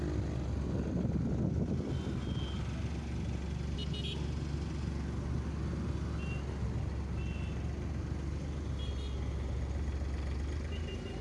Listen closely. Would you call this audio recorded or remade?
recorded